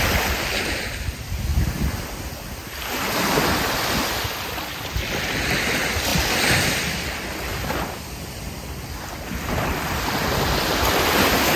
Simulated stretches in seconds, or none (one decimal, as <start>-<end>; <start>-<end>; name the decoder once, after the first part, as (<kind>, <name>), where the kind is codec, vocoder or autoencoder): none